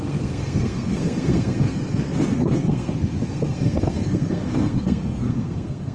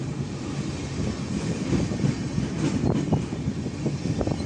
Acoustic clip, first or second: second